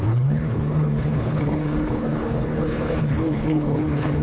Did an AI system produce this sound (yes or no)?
yes